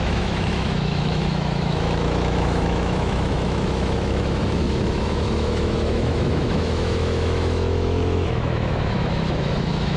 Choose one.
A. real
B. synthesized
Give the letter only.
B